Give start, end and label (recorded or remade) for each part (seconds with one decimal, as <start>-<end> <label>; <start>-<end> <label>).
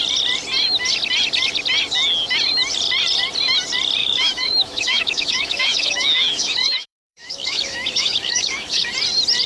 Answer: 0.0-4.0 recorded; 4.0-8.9 remade; 8.9-9.5 recorded